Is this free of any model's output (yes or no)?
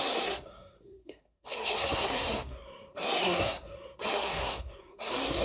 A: no